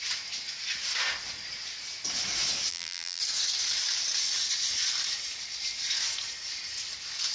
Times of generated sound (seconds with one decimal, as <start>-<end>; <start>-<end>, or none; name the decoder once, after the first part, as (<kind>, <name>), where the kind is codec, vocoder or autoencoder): 2.7-3.2 (vocoder, BigVGAN v2)